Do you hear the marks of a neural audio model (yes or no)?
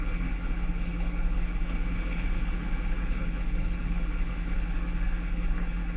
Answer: yes